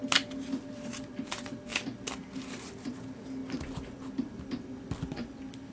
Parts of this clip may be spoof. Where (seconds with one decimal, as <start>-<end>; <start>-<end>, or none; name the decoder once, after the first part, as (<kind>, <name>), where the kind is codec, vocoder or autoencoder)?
none